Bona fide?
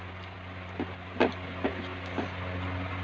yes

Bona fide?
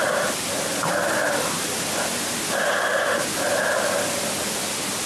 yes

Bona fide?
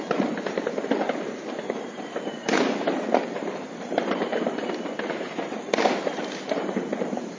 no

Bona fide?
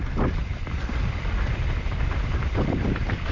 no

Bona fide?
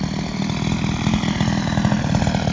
yes